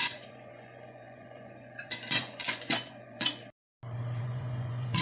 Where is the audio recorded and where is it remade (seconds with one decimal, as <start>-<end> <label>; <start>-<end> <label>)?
0.0-3.4 remade; 3.4-4.2 recorded; 4.2-5.0 remade